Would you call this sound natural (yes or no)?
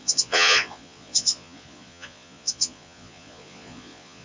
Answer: no